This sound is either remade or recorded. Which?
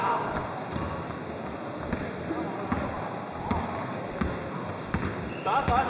recorded